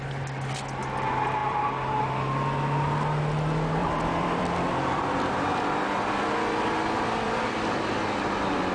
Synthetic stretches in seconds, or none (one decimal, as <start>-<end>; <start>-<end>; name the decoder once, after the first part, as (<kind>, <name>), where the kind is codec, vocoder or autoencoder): 1.4-2.0 (vocoder, BigVGAN v2); 3.8-8.0

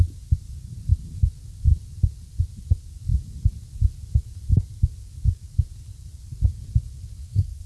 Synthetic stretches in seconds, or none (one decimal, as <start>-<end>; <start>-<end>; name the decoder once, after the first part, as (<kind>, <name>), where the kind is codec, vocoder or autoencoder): 7.2-7.7 (codec, SNAC)

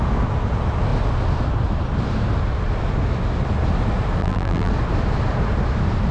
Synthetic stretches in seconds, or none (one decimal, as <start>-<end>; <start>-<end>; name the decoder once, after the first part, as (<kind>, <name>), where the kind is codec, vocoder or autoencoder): 4.2-4.7 (vocoder, BigVGAN v2)

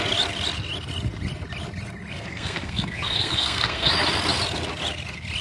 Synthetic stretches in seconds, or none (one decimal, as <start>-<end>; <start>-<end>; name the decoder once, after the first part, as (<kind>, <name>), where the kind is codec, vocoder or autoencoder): 2.1-3.9 (codec, SNAC)

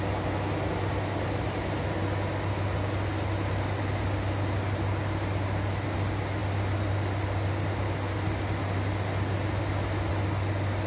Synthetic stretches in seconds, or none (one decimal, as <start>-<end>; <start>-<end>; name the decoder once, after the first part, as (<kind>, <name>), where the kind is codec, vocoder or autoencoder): none

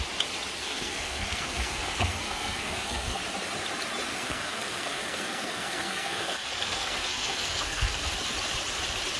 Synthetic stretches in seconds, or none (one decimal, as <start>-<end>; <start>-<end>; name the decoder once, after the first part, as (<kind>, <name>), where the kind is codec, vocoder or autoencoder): 0.6-3.2 (codec, SNAC); 4.1-8.1

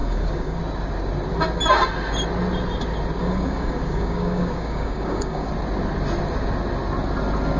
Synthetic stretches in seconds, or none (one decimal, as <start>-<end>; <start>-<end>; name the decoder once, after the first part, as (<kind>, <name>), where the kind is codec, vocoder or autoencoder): 0.0-0.6 (codec, DAC); 3.2-5.5

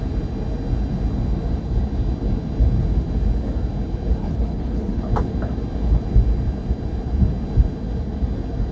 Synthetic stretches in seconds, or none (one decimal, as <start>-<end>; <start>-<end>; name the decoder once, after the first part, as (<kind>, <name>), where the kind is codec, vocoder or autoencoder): 4.2-5.0 (codec, HILCodec)